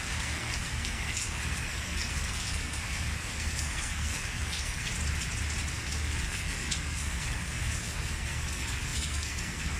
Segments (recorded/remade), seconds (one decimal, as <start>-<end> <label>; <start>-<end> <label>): 0.0-4.9 remade; 4.9-5.7 recorded; 5.7-9.8 remade